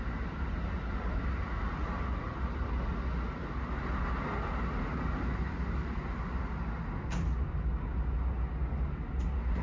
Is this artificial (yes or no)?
no